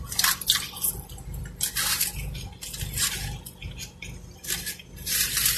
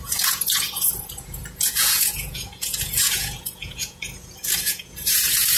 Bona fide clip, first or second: first